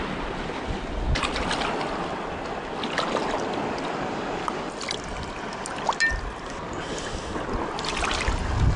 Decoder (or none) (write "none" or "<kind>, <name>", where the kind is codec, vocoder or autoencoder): none